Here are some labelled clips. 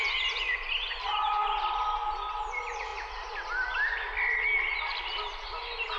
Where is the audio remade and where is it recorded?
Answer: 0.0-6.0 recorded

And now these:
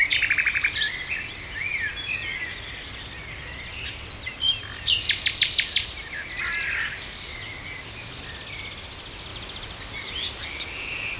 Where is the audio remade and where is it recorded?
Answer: 0.0-11.2 recorded

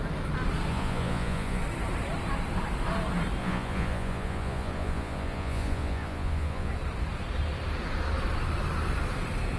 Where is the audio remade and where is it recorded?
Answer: 0.0-0.7 recorded; 0.7-1.6 remade; 1.6-3.4 recorded; 3.4-6.7 remade; 6.7-9.6 recorded

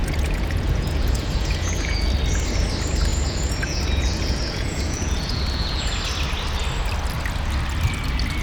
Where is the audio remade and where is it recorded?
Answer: 0.0-2.1 remade; 2.1-3.1 recorded; 3.1-6.0 remade; 6.0-8.4 recorded

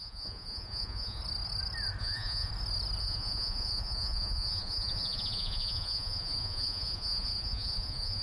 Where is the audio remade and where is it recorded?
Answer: 0.0-1.2 remade; 1.2-2.0 recorded; 2.0-2.5 remade; 2.5-3.0 recorded; 3.0-8.2 remade

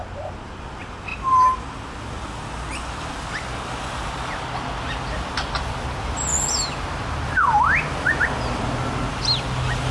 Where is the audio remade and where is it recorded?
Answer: 0.0-9.9 recorded

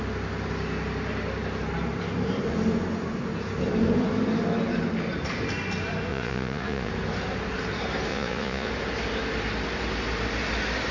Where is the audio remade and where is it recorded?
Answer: 0.0-6.1 recorded; 6.1-6.9 remade; 6.9-8.1 recorded; 8.1-8.7 remade; 8.7-10.9 recorded

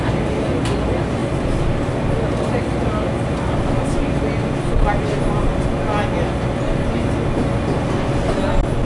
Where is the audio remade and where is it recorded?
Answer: 0.0-8.9 recorded